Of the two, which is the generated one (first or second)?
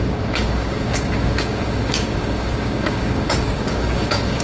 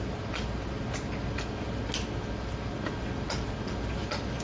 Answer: first